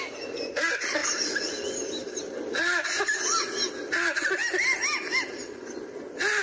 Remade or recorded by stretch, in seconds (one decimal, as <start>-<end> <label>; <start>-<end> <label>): 0.0-6.4 recorded